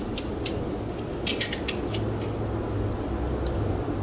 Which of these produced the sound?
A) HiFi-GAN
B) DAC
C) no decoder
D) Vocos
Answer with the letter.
C